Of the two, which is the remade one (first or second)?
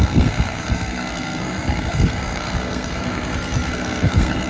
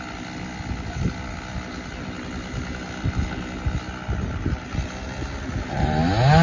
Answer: first